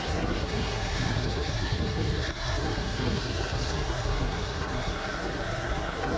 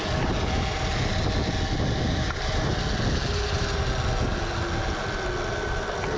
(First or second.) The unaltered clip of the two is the second